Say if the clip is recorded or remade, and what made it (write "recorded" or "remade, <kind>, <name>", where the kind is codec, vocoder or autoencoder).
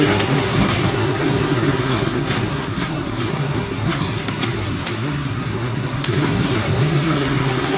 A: remade, codec, SNAC